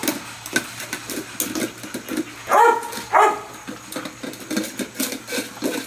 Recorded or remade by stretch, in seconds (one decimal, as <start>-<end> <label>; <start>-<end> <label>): 0.0-2.4 recorded; 2.4-2.9 remade; 2.9-5.9 recorded